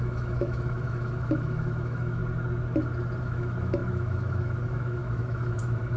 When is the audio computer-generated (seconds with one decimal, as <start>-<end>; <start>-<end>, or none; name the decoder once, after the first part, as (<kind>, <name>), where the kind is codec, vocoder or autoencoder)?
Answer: 0.0-2.2 (autoencoder, DAC-VAE); 3.2-6.0